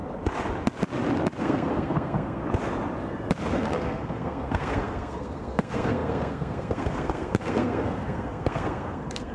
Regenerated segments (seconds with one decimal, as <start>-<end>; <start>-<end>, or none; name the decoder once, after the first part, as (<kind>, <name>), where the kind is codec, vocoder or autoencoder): 1.4-2.4 (codec, SNAC); 3.4-9.3